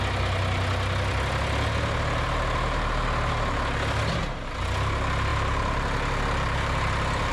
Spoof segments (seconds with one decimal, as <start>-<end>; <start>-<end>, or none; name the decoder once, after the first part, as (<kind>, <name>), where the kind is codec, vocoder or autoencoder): none